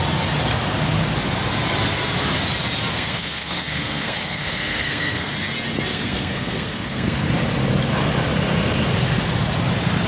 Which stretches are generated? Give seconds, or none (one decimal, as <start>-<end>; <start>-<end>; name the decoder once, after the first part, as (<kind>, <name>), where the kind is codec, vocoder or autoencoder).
2.9-5.3 (codec, SNAC); 5.9-7.3